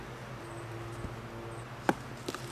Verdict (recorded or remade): recorded